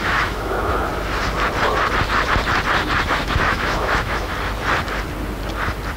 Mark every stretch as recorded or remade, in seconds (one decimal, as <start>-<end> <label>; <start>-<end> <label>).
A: 0.0-0.9 remade; 0.9-3.2 recorded; 3.2-4.3 remade; 4.3-6.0 recorded